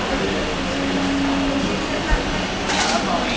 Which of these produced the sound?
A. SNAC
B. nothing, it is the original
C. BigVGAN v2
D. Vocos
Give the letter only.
B